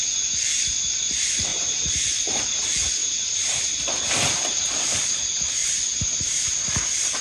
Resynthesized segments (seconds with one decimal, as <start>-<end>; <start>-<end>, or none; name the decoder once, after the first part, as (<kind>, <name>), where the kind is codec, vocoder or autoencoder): 1.5-2.4 (vocoder, BigVGAN v2); 3.0-3.8; 5.6-6.5